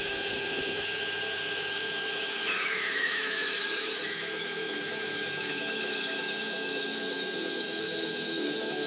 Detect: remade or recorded remade